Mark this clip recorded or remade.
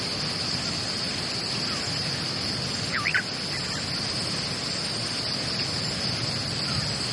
recorded